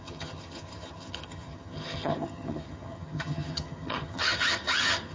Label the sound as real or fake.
fake